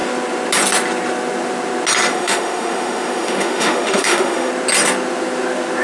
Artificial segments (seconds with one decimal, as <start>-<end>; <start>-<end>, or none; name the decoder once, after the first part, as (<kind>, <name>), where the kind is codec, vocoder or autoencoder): 2.1-4.5 (autoencoder, DAC-VAE)